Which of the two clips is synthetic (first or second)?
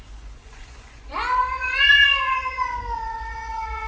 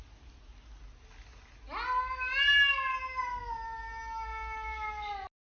first